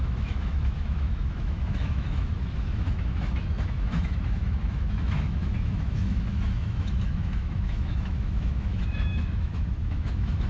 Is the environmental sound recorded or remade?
remade